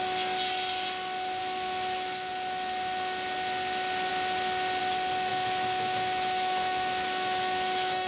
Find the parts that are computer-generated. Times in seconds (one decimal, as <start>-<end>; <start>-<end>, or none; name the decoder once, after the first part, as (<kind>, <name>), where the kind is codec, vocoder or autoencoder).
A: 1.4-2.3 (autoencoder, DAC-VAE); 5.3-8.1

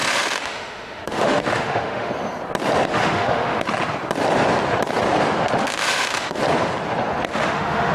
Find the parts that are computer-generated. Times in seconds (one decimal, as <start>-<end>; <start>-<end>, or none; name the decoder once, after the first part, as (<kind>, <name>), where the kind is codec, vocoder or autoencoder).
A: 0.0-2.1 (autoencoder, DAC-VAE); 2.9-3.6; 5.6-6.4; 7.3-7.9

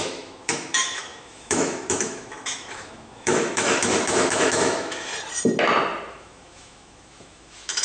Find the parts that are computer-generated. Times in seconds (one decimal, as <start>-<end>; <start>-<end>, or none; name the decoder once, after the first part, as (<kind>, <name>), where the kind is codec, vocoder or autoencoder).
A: 0.0-5.1 (autoencoder, DAC-VAE); 6.1-7.8